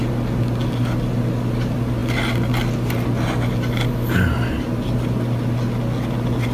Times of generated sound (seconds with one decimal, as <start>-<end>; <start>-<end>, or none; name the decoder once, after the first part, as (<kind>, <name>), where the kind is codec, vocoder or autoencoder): none